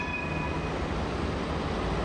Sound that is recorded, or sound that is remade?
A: recorded